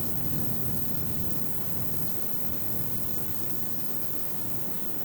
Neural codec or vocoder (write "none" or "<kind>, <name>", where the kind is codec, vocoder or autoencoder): autoencoder, DAC-VAE